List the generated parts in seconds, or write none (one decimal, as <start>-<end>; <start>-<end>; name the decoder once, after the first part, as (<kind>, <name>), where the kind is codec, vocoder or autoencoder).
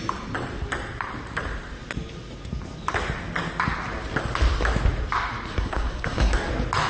5.5-6.5 (codec, SNAC)